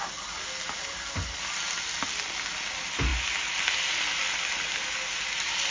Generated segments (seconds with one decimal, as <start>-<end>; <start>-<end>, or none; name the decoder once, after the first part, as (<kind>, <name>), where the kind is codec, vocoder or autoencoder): none